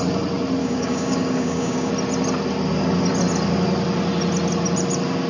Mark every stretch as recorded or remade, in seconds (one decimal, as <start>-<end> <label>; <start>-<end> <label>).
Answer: 0.0-0.6 recorded; 0.6-1.9 remade; 1.9-5.3 recorded

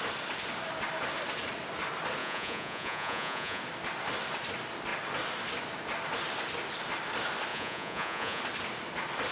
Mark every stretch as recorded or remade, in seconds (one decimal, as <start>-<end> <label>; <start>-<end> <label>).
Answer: 0.0-2.2 recorded; 2.2-3.6 remade; 3.6-7.5 recorded; 7.5-8.4 remade; 8.4-9.3 recorded

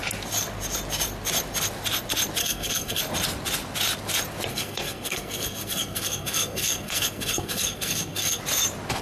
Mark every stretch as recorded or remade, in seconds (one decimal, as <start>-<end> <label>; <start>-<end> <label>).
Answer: 0.0-2.4 recorded; 2.4-3.0 remade; 3.0-4.5 recorded; 4.5-8.4 remade; 8.4-9.0 recorded

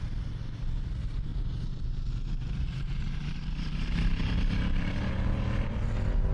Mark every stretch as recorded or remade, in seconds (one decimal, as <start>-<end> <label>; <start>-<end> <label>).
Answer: 0.0-1.3 recorded; 1.3-5.1 remade; 5.1-6.3 recorded

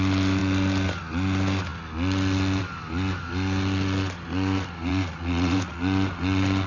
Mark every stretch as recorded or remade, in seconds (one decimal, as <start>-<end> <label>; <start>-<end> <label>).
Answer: 0.0-4.9 recorded; 4.9-5.8 remade; 5.8-6.7 recorded

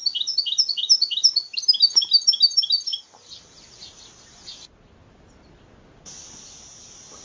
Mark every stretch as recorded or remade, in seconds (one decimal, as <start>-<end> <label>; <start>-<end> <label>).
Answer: 0.0-7.2 recorded